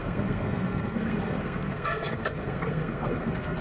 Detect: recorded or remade remade